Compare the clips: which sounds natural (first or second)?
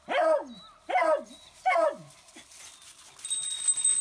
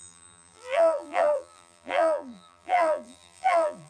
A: first